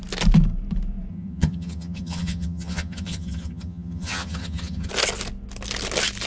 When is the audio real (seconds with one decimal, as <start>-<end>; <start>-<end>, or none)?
0.0-1.1; 4.9-6.3